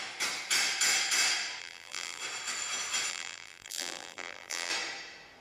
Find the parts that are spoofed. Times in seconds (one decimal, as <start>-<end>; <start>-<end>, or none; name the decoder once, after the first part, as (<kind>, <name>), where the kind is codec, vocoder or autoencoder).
1.6-2.2 (vocoder, BigVGAN v2); 3.1-4.7